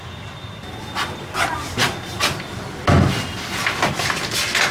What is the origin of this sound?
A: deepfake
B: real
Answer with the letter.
B